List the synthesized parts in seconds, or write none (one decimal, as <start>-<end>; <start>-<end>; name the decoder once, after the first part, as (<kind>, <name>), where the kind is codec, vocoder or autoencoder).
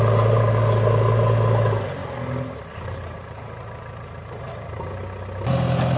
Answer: 2.0-4.9 (vocoder, BigVGAN v2)